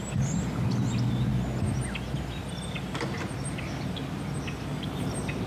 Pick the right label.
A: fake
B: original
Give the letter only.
B